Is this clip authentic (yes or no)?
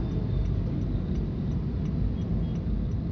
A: yes